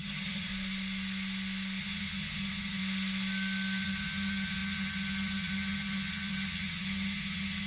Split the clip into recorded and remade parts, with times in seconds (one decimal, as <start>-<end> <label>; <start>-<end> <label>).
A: 0.0-0.5 remade; 0.5-1.8 recorded; 1.8-2.8 remade; 2.8-3.8 recorded; 3.8-7.7 remade